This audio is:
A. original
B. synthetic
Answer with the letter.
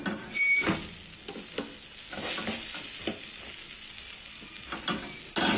A